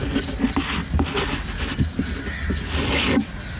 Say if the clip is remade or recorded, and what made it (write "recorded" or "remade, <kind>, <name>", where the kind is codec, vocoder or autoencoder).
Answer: recorded